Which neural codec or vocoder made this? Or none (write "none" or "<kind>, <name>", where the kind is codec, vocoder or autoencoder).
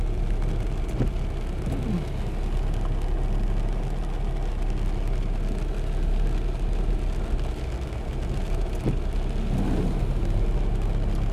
none